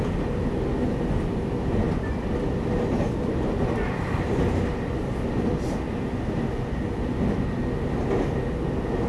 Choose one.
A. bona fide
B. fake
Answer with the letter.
A